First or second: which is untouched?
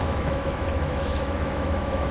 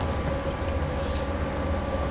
second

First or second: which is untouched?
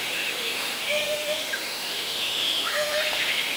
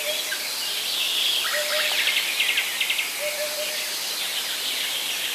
second